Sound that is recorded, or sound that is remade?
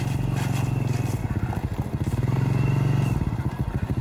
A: recorded